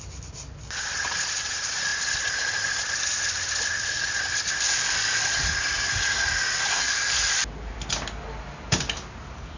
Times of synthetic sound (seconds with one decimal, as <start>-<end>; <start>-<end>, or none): none